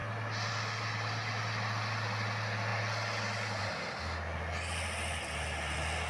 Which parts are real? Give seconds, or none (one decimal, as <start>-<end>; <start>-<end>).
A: 0.0-6.1